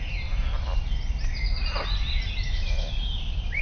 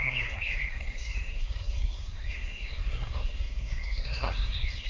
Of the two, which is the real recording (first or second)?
first